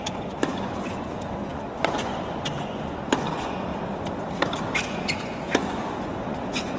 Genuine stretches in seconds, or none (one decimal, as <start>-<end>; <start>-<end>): 3.7-4.8